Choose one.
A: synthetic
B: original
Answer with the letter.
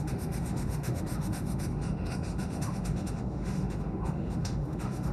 A